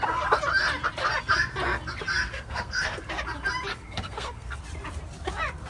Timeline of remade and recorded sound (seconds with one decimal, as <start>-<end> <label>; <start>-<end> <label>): 0.0-2.3 recorded; 2.3-3.0 remade; 3.0-3.7 recorded; 3.7-4.6 remade; 4.6-5.7 recorded